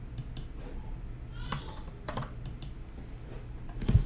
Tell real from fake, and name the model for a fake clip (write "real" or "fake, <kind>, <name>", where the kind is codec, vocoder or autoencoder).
real